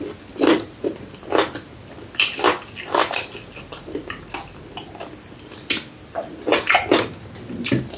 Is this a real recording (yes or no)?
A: yes